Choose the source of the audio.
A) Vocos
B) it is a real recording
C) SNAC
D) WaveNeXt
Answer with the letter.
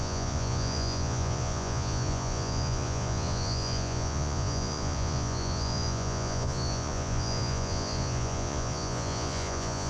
A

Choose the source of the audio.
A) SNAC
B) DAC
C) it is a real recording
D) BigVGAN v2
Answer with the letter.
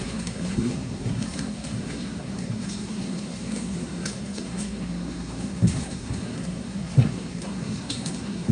A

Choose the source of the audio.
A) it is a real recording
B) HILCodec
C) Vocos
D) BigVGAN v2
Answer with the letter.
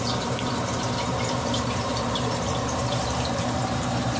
D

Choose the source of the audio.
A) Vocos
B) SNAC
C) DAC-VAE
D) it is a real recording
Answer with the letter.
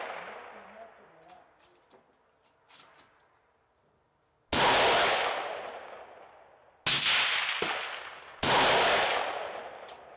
D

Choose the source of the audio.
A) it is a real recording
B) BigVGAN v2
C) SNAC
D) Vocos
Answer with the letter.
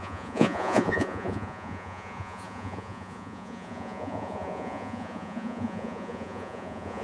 D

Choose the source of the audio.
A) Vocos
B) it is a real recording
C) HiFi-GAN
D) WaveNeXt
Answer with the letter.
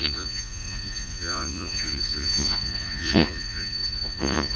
A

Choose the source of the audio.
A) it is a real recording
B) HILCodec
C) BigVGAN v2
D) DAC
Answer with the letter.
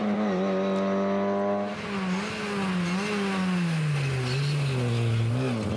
A